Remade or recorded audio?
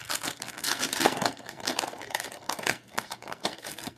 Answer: remade